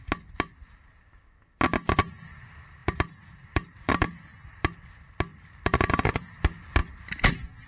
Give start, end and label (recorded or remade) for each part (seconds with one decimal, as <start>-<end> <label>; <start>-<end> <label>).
0.0-2.8 recorded; 2.8-4.2 remade; 4.2-5.3 recorded; 5.3-5.9 remade; 5.9-7.7 recorded

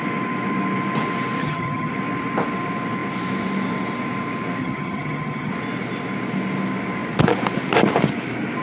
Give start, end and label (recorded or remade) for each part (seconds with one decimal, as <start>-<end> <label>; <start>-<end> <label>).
0.0-1.4 recorded; 1.4-1.9 remade; 1.9-4.6 recorded; 4.6-5.5 remade; 5.5-8.6 recorded